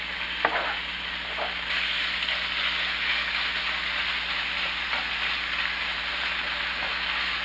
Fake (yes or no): no